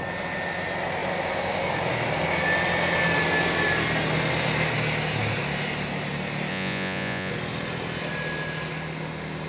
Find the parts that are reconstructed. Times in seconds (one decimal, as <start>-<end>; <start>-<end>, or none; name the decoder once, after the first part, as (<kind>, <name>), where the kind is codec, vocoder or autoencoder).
6.5-7.3 (vocoder, Vocos)